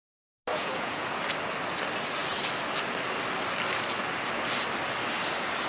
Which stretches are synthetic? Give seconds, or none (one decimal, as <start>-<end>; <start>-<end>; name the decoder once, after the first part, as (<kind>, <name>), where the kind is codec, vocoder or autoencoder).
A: 0.5-1.2 (vocoder, Vocos)